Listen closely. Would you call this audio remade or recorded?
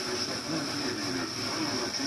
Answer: recorded